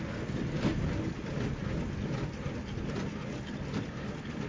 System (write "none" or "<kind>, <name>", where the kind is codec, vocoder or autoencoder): none